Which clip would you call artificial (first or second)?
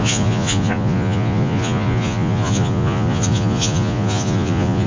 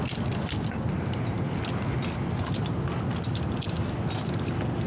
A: first